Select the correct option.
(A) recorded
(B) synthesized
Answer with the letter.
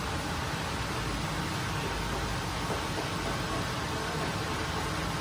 A